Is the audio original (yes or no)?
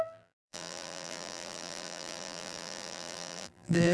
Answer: no